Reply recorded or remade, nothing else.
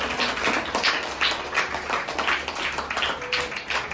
recorded